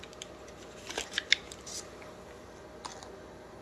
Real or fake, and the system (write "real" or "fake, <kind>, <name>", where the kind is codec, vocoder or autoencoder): real